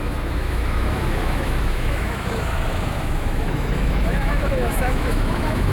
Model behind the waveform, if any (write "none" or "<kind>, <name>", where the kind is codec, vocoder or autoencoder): autoencoder, DAC-VAE